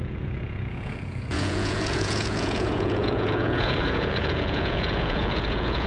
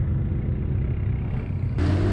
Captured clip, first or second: second